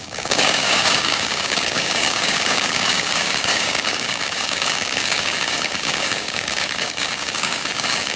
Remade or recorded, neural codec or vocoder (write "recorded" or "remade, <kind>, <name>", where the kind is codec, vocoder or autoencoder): remade, codec, DAC